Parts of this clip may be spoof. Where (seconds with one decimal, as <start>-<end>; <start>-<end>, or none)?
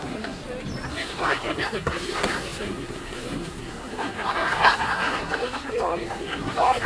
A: 0.0-0.4; 0.9-6.9